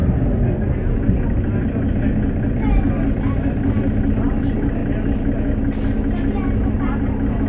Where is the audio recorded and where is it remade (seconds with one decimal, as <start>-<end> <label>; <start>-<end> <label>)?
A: 0.0-7.5 recorded